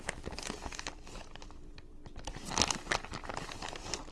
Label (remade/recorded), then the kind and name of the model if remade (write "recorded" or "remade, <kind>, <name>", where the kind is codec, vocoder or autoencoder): remade, vocoder, BigVGAN v2